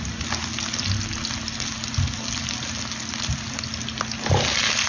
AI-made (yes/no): no